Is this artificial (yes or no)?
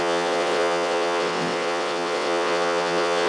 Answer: yes